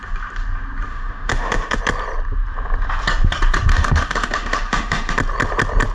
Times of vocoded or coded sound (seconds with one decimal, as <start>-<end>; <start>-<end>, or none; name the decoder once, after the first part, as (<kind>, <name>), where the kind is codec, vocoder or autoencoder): 0.9-1.8 (autoencoder, DAC-VAE); 3.7-5.1